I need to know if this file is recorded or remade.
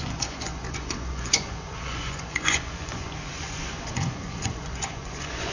remade